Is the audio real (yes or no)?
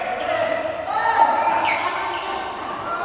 yes